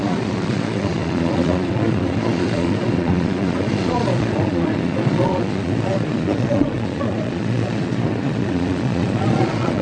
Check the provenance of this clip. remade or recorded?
remade